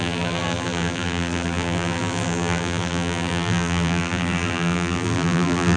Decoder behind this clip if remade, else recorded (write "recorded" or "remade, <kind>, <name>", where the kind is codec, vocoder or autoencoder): remade, vocoder, BigVGAN v2